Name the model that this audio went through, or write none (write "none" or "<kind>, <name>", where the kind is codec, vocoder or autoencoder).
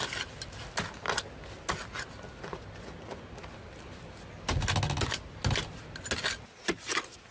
none